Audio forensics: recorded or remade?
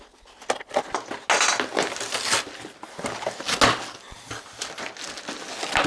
recorded